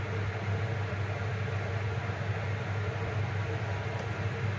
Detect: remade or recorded recorded